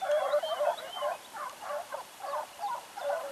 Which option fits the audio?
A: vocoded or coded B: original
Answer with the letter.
A